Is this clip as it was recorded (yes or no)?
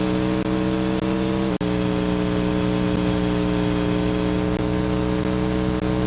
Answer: yes